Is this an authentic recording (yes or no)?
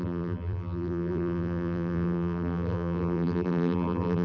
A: no